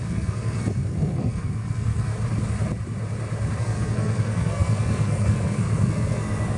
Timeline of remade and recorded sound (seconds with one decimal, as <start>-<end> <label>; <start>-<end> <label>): 0.0-2.1 remade; 2.1-3.6 recorded; 3.6-6.6 remade